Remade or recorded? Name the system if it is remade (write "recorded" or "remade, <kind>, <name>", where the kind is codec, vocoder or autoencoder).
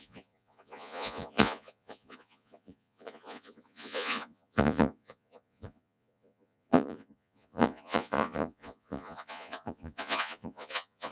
remade, vocoder, Vocos